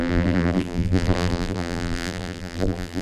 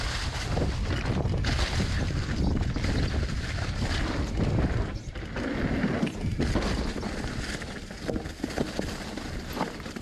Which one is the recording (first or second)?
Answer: second